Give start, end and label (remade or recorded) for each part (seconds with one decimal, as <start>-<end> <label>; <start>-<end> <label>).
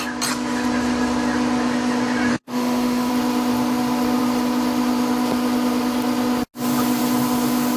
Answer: 0.0-2.3 recorded; 2.3-3.1 remade; 3.1-7.8 recorded